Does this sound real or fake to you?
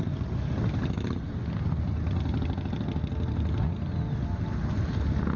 real